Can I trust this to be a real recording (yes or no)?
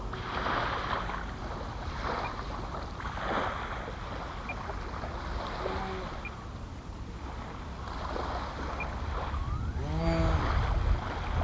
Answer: yes